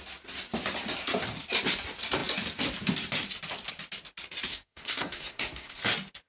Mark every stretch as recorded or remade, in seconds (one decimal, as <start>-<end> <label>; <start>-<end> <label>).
0.0-4.5 recorded; 4.5-5.8 remade; 5.8-6.3 recorded